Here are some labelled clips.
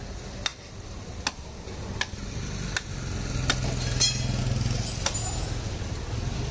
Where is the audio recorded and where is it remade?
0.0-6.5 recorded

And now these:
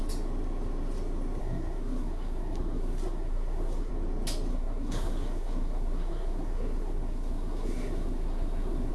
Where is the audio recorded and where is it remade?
0.0-1.4 recorded; 1.4-3.9 remade; 3.9-4.5 recorded; 4.5-8.9 remade

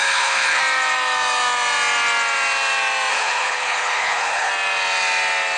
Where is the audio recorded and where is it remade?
0.0-0.6 remade; 0.6-3.1 recorded; 3.1-4.5 remade; 4.5-5.6 recorded